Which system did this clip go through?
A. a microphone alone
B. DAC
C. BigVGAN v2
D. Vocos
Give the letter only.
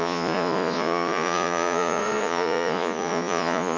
D